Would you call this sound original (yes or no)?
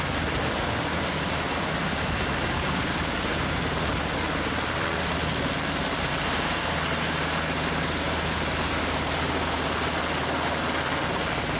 yes